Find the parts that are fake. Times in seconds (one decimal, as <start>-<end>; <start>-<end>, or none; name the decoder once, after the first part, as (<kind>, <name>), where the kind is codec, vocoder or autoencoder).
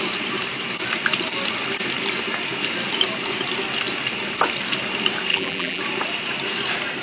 5.3-5.8 (vocoder, BigVGAN v2)